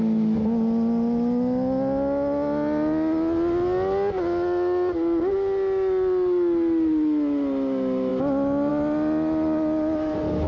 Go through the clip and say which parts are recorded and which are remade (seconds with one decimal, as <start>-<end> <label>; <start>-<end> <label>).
0.0-10.5 recorded